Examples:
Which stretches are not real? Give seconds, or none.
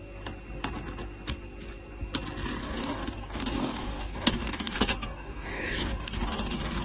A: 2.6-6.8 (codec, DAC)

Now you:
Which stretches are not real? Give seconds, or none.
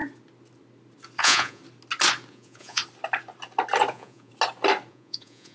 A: 1.2-1.6 (vocoder, Vocos); 2.3-2.8; 3.9-4.3; 4.9-5.5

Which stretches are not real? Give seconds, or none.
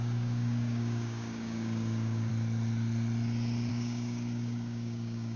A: 0.0-2.3 (codec, DAC); 3.7-5.4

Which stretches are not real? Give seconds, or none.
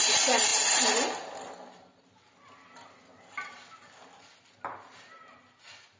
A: none